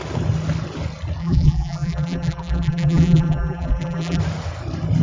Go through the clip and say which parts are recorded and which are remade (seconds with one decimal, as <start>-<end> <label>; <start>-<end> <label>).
0.0-1.2 recorded; 1.2-4.2 remade; 4.2-5.0 recorded